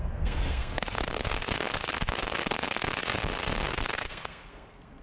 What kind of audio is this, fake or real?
fake